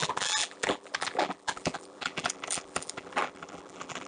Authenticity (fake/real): fake